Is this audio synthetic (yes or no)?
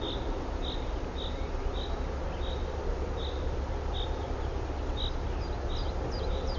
no